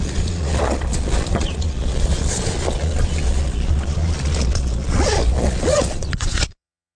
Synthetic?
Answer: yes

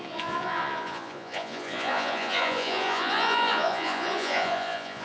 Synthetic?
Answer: yes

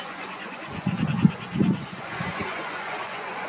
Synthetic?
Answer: yes